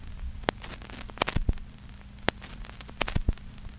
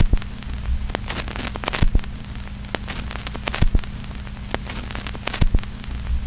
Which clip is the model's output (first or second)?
first